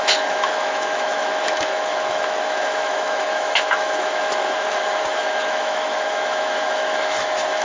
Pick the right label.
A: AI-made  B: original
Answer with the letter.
A